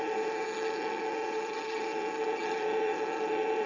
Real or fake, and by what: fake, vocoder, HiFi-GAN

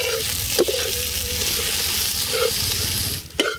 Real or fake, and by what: real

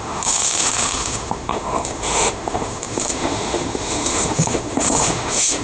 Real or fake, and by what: fake, autoencoder, DAC-VAE